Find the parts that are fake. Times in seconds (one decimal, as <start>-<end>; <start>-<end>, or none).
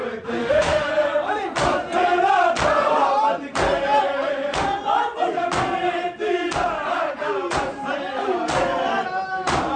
0.4-0.9